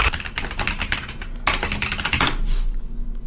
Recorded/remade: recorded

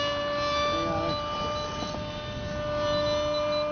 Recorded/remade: recorded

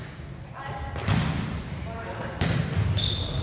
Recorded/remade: recorded